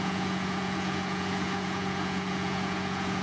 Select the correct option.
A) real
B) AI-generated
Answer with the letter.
B